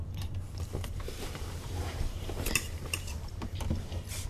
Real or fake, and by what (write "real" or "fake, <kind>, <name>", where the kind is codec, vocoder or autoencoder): fake, vocoder, BigVGAN v2